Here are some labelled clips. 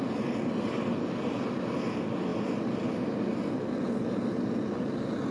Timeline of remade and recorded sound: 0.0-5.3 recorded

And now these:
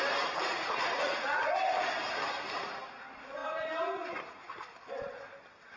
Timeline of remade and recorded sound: 0.0-0.4 recorded; 0.4-1.4 remade; 1.4-5.8 recorded

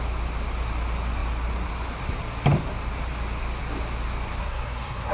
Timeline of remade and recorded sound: 0.0-4.4 recorded; 4.4-5.1 remade